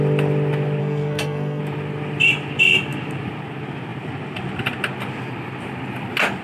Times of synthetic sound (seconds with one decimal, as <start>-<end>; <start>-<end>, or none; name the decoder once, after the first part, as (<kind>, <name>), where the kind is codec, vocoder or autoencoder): 0.8-1.6 (codec, SNAC)